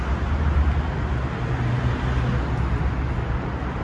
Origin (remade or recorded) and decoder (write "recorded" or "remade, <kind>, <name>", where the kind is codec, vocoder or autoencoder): recorded